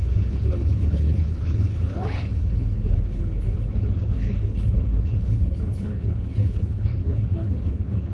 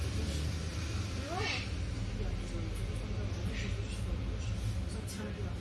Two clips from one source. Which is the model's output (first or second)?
first